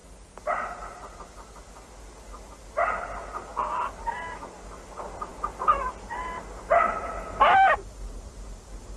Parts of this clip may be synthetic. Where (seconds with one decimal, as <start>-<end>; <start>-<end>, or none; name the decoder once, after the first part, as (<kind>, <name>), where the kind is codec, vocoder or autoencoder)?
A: none